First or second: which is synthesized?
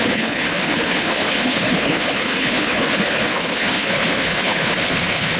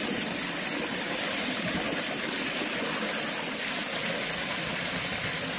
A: first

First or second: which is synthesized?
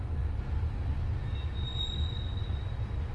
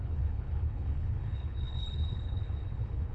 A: second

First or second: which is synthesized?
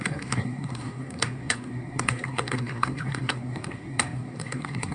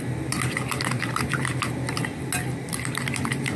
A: first